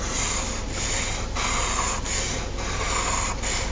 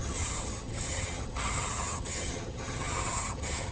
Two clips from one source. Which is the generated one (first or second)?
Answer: second